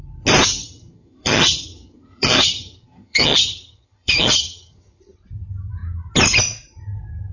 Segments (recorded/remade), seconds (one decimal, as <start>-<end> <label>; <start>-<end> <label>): 0.0-0.6 recorded; 0.6-5.0 remade; 5.0-7.3 recorded